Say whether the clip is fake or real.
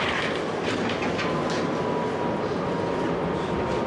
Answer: real